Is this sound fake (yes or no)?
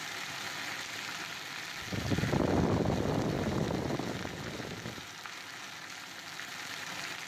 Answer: no